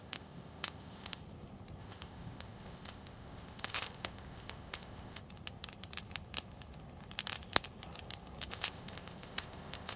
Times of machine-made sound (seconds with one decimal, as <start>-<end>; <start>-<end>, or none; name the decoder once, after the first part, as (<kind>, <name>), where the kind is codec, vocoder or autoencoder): 0.0-1.2 (codec, ZipCodec); 1.8-5.2; 8.5-10.0